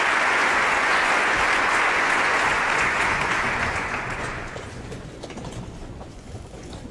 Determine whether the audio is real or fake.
fake